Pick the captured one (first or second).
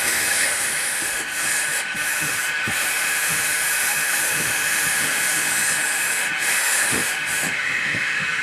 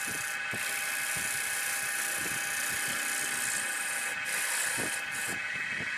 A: second